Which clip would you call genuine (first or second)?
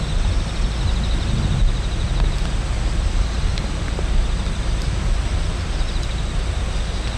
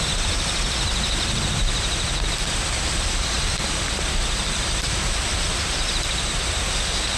first